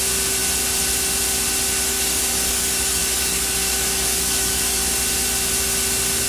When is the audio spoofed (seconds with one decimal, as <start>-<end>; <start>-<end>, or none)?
1.9-4.8